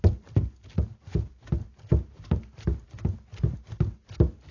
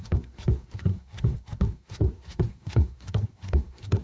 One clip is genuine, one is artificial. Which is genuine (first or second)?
first